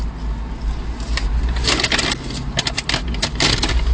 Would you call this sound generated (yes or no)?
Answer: no